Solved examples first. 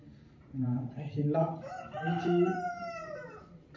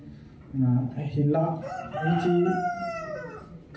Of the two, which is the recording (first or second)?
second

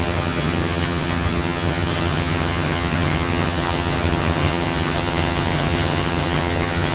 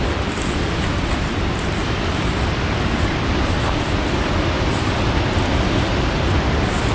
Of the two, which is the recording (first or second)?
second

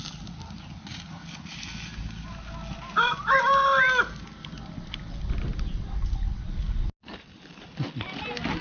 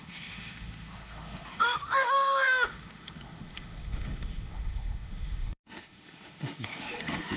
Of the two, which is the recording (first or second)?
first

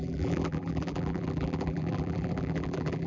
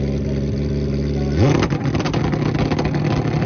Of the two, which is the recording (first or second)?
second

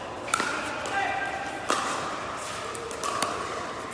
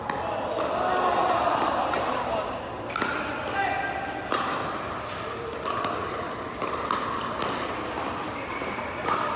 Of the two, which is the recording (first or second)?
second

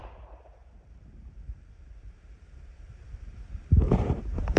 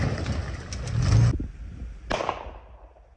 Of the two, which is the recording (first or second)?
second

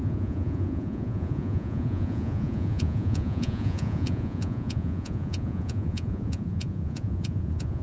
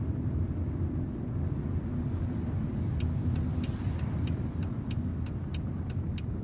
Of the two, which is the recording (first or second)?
second